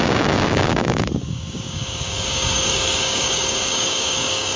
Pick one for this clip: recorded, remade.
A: remade